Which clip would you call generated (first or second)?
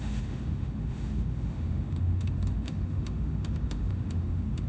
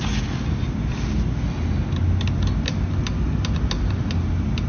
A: first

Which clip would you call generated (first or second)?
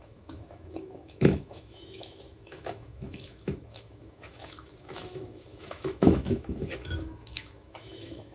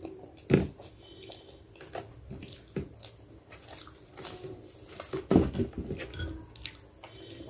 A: first